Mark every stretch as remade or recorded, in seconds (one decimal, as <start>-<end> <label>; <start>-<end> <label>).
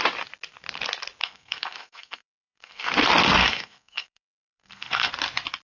0.0-1.2 recorded; 1.2-2.9 remade; 2.9-3.4 recorded; 3.4-5.1 remade; 5.1-5.6 recorded